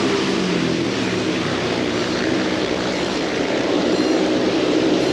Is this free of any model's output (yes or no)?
no